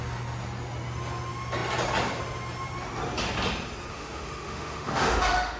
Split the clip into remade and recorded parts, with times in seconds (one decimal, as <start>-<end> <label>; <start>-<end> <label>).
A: 0.0-3.9 recorded; 3.9-5.6 remade